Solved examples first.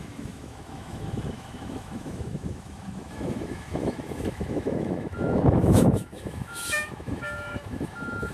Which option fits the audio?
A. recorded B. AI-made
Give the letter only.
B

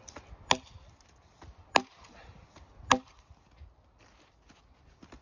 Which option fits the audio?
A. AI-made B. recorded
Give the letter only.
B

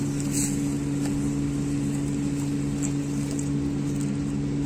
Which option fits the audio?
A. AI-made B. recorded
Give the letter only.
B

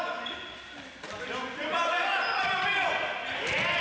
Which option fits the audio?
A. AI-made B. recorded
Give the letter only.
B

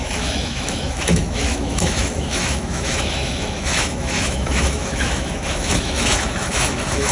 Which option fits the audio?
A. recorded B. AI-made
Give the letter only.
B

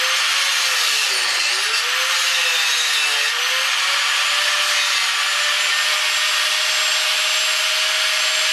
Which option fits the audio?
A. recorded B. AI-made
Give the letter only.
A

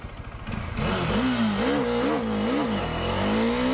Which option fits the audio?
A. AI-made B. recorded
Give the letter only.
B